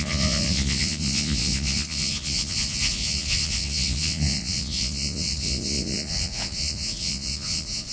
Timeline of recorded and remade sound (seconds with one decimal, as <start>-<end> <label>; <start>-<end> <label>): 0.0-7.9 remade